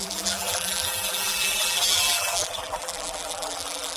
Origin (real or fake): fake